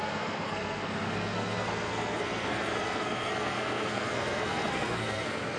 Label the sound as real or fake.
fake